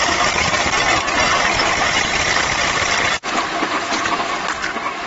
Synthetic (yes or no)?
yes